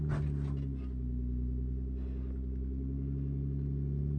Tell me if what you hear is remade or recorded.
recorded